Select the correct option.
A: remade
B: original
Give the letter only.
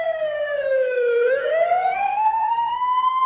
A